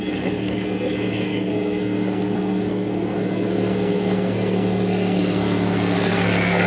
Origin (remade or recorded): remade